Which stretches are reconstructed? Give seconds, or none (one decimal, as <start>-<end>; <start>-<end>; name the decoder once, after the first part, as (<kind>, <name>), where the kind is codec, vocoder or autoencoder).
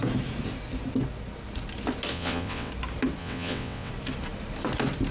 2.1-2.7 (vocoder, WaveNeXt); 3.2-3.9